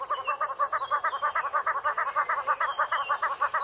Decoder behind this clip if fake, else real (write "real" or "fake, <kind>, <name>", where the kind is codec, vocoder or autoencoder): real